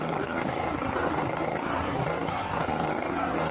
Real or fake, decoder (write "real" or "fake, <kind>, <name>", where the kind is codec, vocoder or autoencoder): fake, codec, SNAC